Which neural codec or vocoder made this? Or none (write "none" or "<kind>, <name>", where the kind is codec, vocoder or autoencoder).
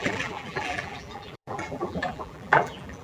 vocoder, BigVGAN v2